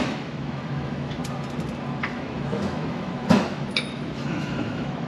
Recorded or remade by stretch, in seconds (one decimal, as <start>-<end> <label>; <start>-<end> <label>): 0.0-1.2 remade; 1.2-2.0 recorded; 2.0-5.1 remade